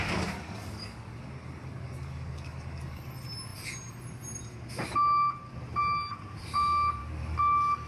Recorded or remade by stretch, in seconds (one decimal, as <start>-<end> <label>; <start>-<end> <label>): 0.0-3.0 remade; 3.0-7.0 recorded; 7.0-7.9 remade